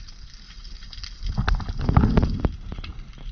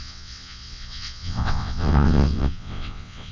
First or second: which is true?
first